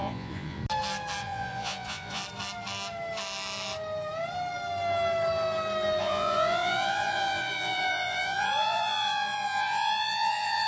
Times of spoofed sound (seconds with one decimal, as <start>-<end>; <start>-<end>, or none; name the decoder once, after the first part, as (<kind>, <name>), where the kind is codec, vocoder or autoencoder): 0.0-0.6 (vocoder, Vocos); 1.2-2.2; 6.0-10.7